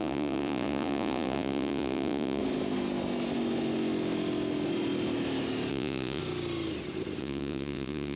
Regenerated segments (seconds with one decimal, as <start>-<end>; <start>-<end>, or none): 0.0-2.4; 5.7-6.2; 7.2-8.2